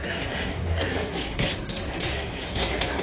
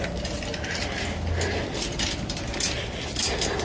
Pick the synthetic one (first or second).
first